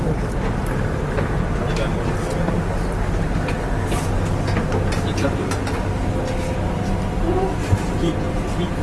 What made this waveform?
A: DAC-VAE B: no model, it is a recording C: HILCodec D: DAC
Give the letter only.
B